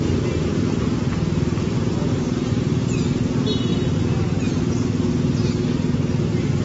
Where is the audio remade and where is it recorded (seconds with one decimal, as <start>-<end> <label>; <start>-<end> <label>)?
0.0-0.5 recorded; 0.5-3.0 remade; 3.0-6.6 recorded